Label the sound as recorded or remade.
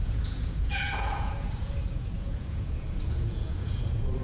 remade